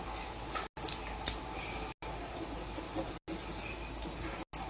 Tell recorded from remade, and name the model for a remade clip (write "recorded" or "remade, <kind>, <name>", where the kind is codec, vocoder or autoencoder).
recorded